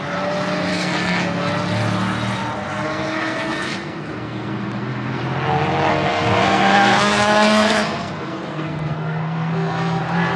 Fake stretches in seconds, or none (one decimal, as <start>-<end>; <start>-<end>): 0.7-1.5; 2.7-5.2; 5.9-10.0